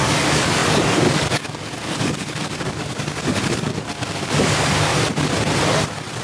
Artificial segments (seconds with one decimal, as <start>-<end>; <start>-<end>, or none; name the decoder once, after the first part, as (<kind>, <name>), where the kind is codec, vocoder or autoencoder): 0.0-4.9 (codec, DAC)